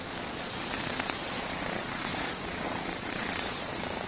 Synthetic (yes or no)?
yes